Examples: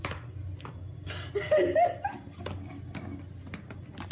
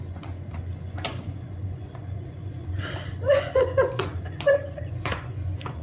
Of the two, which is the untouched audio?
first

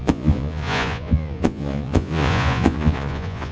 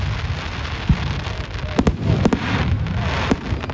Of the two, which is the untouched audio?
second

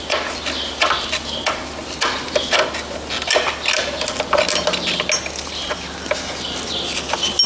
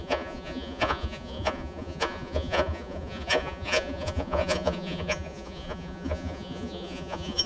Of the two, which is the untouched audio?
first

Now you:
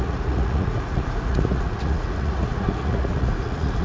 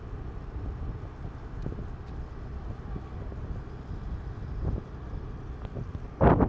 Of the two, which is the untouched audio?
second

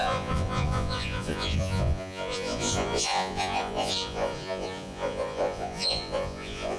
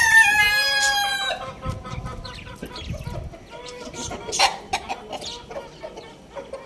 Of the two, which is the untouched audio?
second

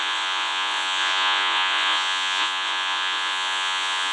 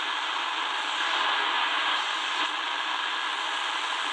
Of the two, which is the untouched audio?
second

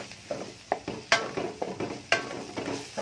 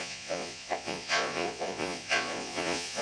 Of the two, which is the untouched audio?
first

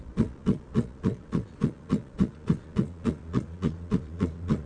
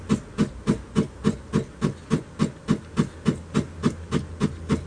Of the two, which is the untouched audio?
second